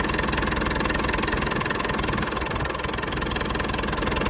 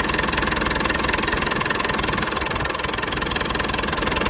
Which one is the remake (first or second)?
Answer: second